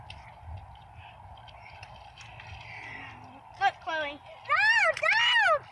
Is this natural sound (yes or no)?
yes